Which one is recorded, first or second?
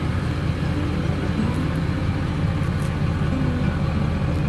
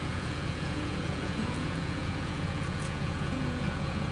first